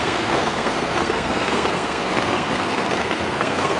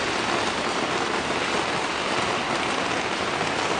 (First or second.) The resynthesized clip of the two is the first